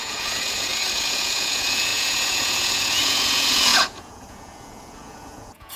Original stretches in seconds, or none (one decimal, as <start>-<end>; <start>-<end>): none